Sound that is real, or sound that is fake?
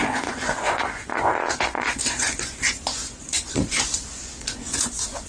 fake